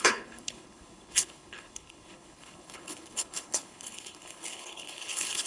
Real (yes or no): no